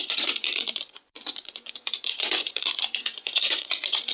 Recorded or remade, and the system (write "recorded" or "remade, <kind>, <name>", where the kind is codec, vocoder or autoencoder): remade, vocoder, Vocos